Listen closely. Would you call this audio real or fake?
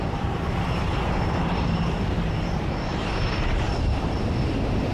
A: fake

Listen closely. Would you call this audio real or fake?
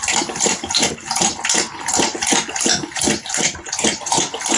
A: real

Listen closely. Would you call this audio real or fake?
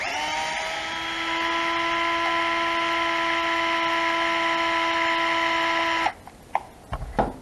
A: real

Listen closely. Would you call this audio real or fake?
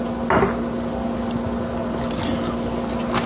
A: real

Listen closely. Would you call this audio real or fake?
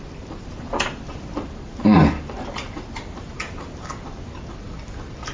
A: fake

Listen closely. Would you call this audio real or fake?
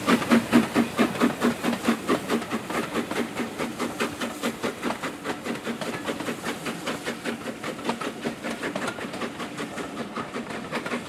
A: real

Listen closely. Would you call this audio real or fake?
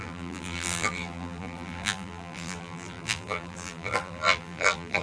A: fake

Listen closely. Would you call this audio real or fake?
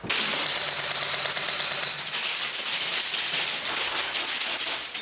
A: real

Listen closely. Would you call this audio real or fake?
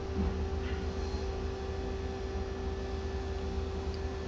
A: real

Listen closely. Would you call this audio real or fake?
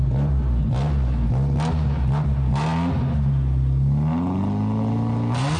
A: real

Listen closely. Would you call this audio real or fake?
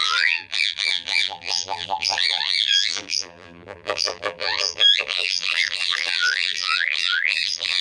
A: fake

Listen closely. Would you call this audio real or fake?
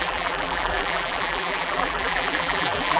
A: fake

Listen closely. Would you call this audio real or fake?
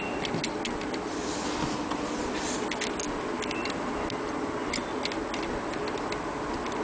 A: real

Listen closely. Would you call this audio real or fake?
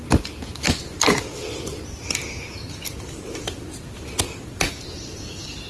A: real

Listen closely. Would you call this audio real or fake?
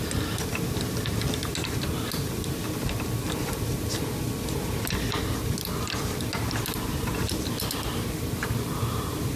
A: real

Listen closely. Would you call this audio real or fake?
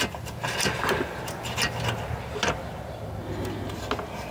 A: real